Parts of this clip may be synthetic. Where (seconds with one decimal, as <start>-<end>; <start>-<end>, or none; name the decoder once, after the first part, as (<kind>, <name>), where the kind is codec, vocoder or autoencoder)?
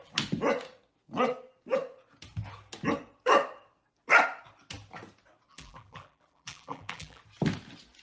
5.5-7.2 (vocoder, BigVGAN v2)